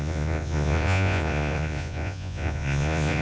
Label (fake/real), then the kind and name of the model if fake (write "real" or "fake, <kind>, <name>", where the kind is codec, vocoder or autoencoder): fake, vocoder, Vocos